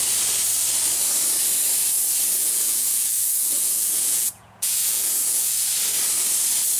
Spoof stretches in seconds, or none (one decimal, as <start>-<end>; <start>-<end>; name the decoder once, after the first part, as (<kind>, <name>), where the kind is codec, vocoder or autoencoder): 2.4-5.7 (vocoder, Vocos)

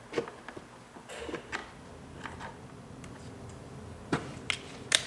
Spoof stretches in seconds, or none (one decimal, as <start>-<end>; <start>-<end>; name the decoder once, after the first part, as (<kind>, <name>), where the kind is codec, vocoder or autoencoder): none

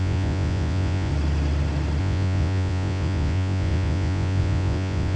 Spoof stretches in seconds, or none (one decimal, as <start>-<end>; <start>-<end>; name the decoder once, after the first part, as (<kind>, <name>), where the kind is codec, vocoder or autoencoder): 0.0-1.1 (vocoder, Vocos); 2.0-5.2

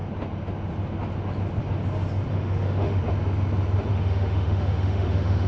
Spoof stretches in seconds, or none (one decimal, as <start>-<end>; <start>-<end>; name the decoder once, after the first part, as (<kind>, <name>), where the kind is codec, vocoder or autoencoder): 2.3-3.0 (autoencoder, DAC-VAE); 3.9-5.5

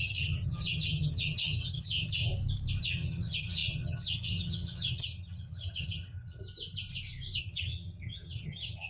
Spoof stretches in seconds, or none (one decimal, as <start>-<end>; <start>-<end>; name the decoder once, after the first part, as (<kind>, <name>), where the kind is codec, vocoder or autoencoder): 0.0-2.3 (vocoder, HiFi-GAN); 2.8-6.4; 7.4-8.9

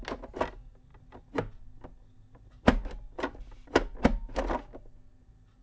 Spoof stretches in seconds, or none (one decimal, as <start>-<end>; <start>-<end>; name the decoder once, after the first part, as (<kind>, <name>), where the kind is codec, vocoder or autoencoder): none

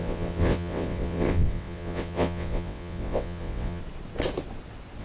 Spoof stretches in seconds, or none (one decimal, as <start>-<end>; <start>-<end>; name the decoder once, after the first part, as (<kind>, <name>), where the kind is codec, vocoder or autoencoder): 0.0-3.8 (vocoder, WaveNeXt)